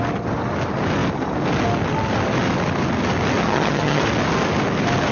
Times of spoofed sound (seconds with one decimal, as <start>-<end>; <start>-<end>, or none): 3.4-4.0